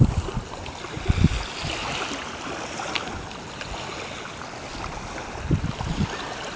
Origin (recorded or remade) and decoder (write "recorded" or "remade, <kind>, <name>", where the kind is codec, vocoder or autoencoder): recorded